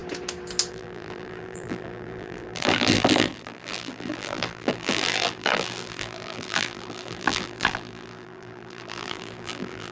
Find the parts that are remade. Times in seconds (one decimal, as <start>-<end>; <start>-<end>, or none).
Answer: 0.7-9.9